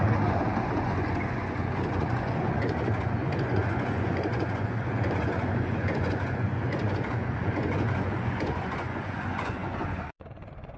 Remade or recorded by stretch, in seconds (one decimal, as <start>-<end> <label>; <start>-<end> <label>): 0.0-10.8 remade